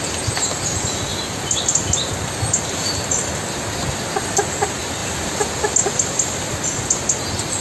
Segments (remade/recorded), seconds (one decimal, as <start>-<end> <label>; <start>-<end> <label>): 0.0-7.6 recorded